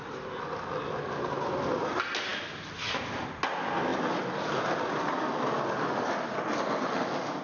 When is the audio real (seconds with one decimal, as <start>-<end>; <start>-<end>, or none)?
0.0-7.4